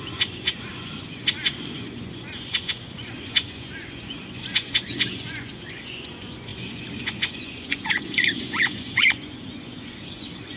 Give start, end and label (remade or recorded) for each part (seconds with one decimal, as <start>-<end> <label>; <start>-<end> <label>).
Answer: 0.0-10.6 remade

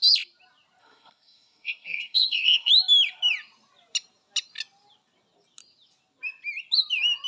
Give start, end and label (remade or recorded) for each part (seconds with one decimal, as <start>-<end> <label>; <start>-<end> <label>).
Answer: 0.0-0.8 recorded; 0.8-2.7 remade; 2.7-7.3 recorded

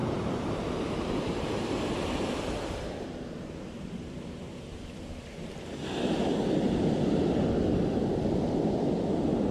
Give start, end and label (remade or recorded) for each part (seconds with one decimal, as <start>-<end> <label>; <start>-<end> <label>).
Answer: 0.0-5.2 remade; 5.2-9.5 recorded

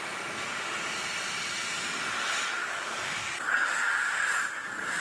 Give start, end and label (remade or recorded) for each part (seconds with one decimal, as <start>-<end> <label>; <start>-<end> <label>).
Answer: 0.0-2.6 recorded; 2.6-5.0 remade

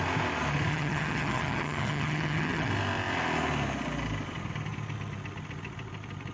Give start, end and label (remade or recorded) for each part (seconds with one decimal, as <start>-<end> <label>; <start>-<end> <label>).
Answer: 0.0-0.7 recorded; 0.7-2.7 remade; 2.7-6.3 recorded

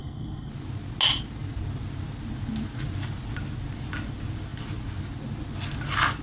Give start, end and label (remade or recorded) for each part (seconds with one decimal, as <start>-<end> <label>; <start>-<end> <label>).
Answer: 0.0-0.5 remade; 0.5-6.2 recorded

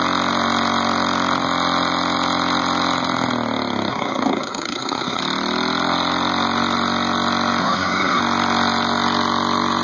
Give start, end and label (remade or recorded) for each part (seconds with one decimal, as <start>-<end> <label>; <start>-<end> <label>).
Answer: 0.0-3.9 recorded; 3.9-5.2 remade; 5.2-7.6 recorded; 7.6-8.2 remade; 8.2-9.8 recorded

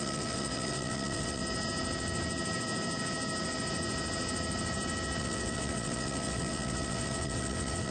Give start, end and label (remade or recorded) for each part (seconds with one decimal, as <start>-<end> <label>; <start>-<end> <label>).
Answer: 0.0-1.4 remade; 1.4-5.2 recorded; 5.2-7.9 remade